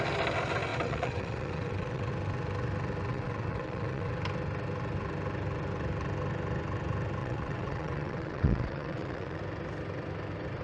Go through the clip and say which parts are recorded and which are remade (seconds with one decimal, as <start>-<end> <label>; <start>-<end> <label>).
0.0-0.7 recorded; 0.7-2.1 remade; 2.1-3.1 recorded; 3.1-4.1 remade; 4.1-7.2 recorded; 7.2-9.4 remade; 9.4-10.6 recorded